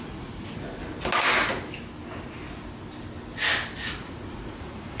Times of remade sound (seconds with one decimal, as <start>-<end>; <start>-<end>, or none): 0.0-0.8; 3.8-5.0